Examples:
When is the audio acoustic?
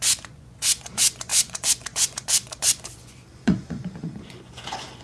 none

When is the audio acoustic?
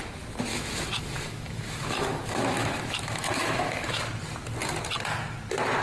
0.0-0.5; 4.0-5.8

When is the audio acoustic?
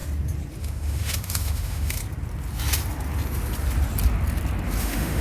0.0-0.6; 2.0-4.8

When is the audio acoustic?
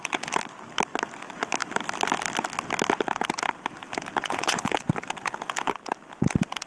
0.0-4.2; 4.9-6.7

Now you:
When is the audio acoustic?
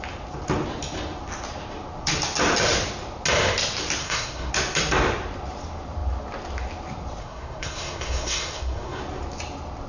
0.0-4.0; 4.5-7.2; 9.0-9.9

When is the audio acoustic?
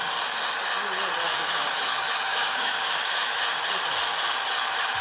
0.0-1.3; 3.4-5.0